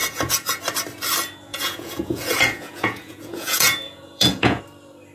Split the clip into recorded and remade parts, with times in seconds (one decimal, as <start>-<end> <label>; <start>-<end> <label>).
0.0-0.6 remade; 0.6-1.5 recorded; 1.5-4.6 remade; 4.6-5.1 recorded